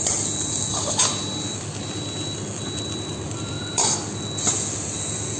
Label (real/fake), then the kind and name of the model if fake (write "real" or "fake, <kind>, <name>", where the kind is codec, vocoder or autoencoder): real